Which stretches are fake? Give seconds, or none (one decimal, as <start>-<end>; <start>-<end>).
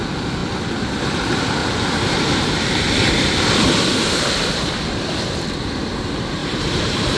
1.6-2.9; 6.4-7.2